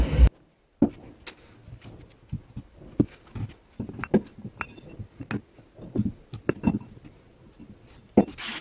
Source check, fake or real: real